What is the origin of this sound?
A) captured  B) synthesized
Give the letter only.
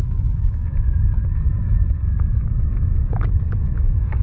B